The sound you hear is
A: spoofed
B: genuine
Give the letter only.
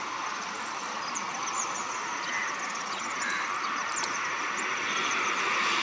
A